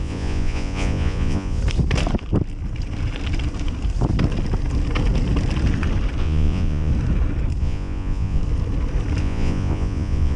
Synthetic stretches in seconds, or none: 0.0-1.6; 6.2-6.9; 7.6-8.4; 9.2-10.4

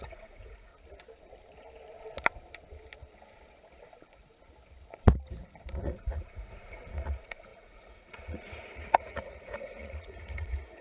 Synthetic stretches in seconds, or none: 0.0-0.7; 5.8-10.8

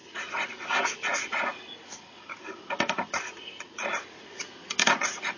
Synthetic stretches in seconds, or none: 0.0-5.4

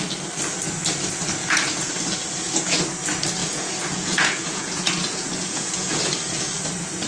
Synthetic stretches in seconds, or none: 1.4-1.9; 3.4-6.0